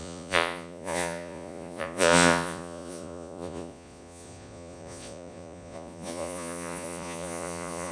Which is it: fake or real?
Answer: fake